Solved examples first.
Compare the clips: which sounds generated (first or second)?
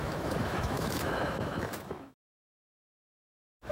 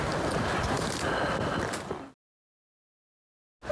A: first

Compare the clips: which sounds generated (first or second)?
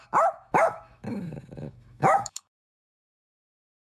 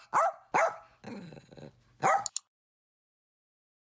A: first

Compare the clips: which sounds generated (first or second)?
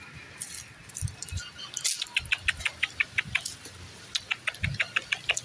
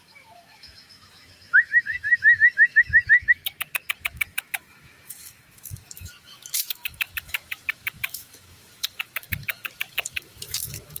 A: second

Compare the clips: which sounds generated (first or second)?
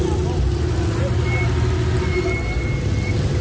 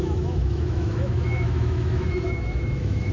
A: second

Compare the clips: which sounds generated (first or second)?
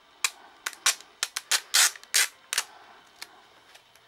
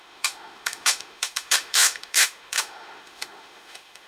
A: second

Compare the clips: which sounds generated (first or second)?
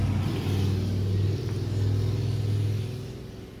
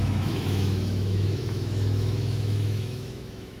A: second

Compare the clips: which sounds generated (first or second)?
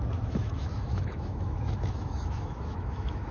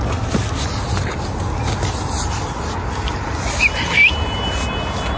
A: first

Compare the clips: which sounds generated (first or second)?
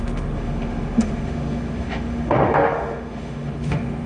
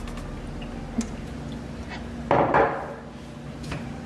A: first